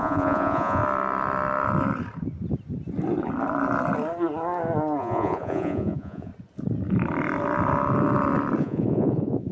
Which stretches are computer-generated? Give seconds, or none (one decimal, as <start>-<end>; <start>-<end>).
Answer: 0.0-0.8; 5.0-6.3; 8.6-9.5